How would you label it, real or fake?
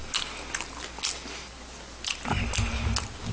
real